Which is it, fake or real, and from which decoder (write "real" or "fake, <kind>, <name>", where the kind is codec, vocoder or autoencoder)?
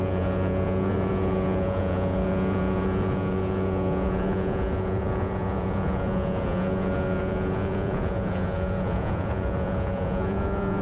fake, vocoder, Vocos